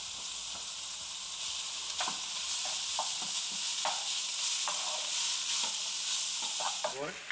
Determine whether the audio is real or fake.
real